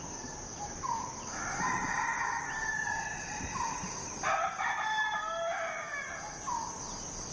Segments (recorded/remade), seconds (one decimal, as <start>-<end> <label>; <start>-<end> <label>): 0.0-7.3 recorded